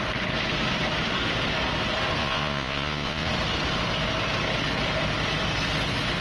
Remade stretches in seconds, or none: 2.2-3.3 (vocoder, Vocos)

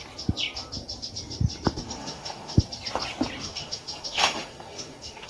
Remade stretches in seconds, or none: 2.0-2.6 (autoencoder, DAC-VAE); 3.4-5.3

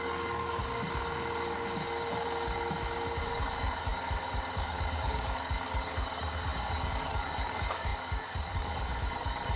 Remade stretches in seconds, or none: 0.0-0.6 (codec, DAC); 3.2-3.9; 4.5-9.6